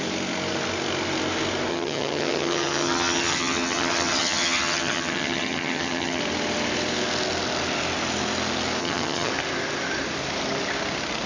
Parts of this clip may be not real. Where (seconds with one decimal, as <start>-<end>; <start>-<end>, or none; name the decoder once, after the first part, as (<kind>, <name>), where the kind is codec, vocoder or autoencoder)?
1.7-6.2 (vocoder, HiFi-GAN); 8.8-9.3